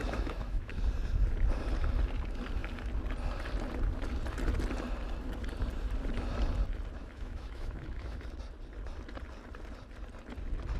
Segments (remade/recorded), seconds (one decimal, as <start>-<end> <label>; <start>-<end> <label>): 0.0-0.7 remade; 0.7-7.0 recorded; 7.0-8.2 remade; 8.2-10.8 recorded